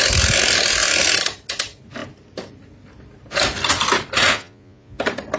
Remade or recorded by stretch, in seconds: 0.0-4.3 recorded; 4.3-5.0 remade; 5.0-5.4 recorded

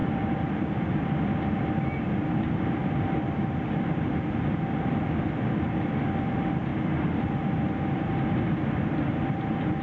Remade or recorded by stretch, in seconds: 0.0-0.5 remade; 0.5-2.8 recorded; 2.8-3.3 remade; 3.3-6.7 recorded; 6.7-8.7 remade; 8.7-9.8 recorded

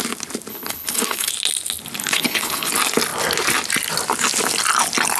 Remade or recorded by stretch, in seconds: 0.0-0.5 recorded; 0.5-1.3 remade; 1.3-2.0 recorded; 2.0-2.7 remade; 2.7-5.2 recorded